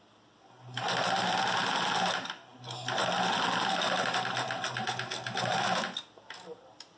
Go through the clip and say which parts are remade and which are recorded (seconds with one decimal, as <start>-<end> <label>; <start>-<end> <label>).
0.0-7.0 recorded